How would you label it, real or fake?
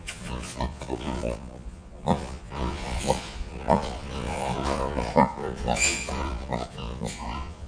fake